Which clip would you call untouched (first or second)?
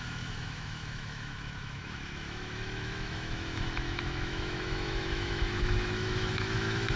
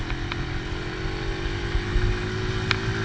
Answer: second